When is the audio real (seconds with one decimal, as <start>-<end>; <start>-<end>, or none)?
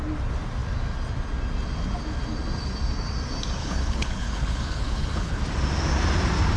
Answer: 0.0-3.6; 5.4-6.6